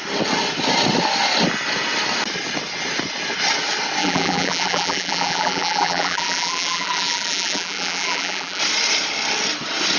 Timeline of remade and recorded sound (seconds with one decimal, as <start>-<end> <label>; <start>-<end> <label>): 0.0-4.0 recorded; 4.0-8.6 remade; 8.6-10.0 recorded